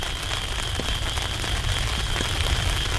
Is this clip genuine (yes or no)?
yes